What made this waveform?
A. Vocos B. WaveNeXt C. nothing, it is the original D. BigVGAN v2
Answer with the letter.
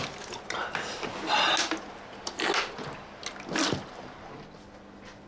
C